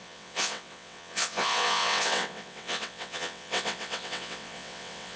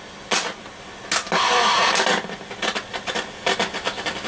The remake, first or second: first